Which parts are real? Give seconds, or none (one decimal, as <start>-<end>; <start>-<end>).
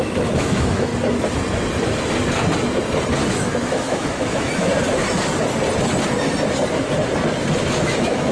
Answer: 0.9-3.3; 4.7-7.8